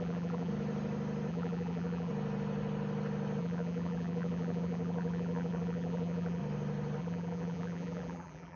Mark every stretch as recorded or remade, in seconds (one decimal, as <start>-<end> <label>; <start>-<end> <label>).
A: 0.0-0.5 remade; 0.5-1.3 recorded; 1.3-2.1 remade; 2.1-3.4 recorded; 3.4-6.4 remade; 6.4-7.0 recorded; 7.0-8.6 remade